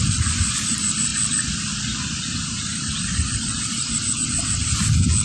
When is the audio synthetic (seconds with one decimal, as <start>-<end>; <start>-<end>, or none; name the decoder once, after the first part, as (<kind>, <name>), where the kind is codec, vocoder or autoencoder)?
none